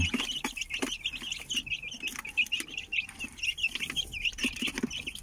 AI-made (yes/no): no